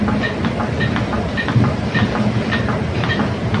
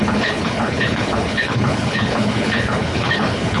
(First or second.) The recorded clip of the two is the first